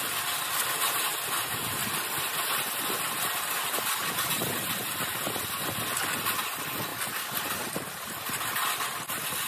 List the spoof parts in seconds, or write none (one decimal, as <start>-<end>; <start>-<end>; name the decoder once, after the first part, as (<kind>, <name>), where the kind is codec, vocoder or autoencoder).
none